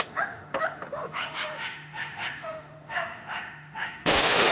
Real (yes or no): no